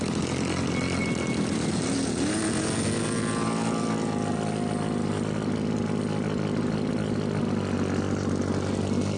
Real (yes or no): yes